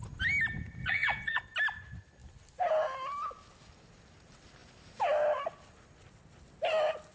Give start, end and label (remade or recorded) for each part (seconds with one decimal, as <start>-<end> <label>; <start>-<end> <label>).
0.0-0.8 recorded; 0.8-1.4 remade; 1.4-7.1 recorded